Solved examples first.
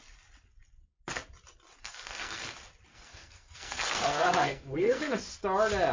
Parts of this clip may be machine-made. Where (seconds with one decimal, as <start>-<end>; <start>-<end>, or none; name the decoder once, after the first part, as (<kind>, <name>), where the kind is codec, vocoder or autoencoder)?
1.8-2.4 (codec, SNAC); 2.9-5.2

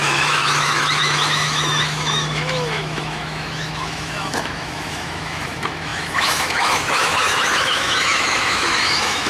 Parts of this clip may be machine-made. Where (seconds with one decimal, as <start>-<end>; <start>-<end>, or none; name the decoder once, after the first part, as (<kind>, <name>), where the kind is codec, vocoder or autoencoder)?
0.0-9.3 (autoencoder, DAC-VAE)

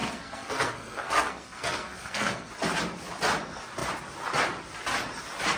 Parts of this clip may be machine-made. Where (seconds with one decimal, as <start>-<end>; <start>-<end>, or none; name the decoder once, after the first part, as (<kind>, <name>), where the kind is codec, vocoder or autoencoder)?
0.0-2.5 (codec, SNAC)